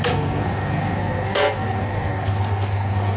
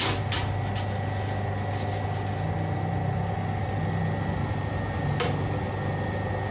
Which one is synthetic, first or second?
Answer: first